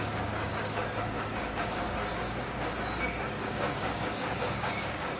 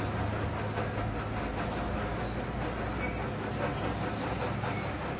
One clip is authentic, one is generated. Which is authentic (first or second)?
second